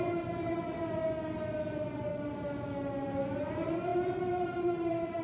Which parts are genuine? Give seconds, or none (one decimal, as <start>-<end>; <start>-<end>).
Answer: 1.0-1.7; 2.1-3.5